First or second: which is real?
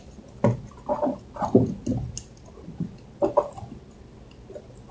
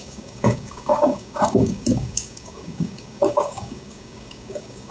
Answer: first